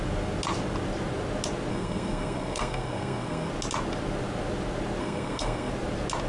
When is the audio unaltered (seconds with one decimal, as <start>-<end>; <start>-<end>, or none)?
0.0-1.7; 3.5-5.0; 5.7-6.3